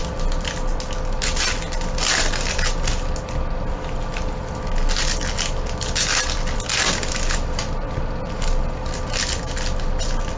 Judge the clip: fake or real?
real